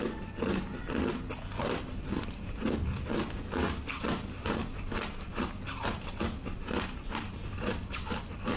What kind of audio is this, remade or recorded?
recorded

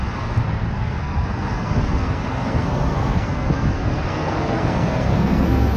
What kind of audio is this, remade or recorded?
remade